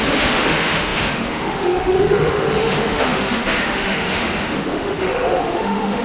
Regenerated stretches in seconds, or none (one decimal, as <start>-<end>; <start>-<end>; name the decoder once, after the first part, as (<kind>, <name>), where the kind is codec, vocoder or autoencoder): 0.0-6.0 (autoencoder, DAC-VAE)